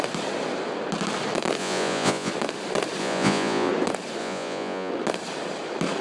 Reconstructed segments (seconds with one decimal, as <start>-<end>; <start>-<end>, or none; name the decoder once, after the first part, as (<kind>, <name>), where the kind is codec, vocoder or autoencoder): 1.6-2.3 (vocoder, Vocos); 3.0-3.7; 4.2-4.9